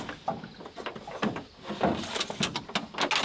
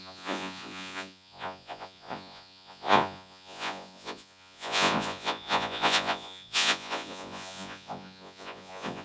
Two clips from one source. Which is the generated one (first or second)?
second